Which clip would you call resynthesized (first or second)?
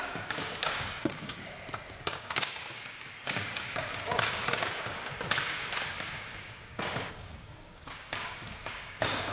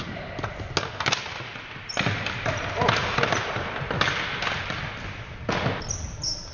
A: first